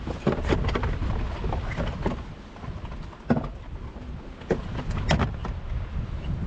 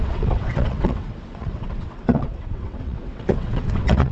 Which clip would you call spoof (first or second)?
second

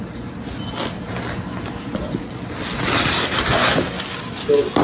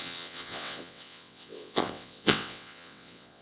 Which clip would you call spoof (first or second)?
second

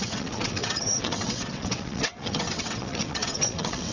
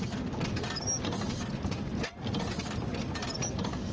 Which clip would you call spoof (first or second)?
first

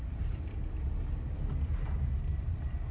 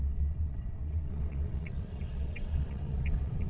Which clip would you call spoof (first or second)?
second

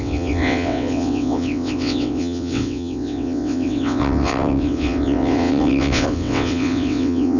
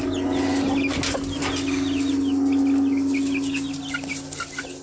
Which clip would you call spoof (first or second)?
first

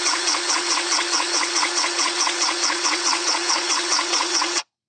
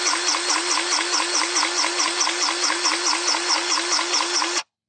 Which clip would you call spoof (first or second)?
first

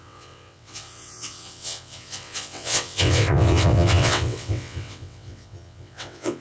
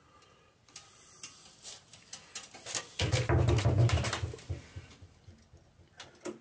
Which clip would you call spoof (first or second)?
first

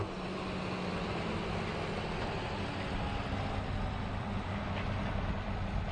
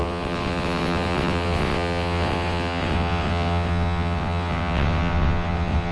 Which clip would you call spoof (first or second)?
second